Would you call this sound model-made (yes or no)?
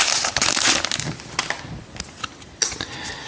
no